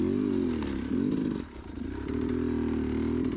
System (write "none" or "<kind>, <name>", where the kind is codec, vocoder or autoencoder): none